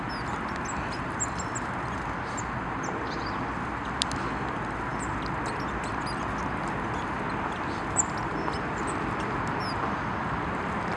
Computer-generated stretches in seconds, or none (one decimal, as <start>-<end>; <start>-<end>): none